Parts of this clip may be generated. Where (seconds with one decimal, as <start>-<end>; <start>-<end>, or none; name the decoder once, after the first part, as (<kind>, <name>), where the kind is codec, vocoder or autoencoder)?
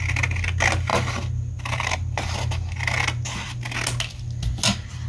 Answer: none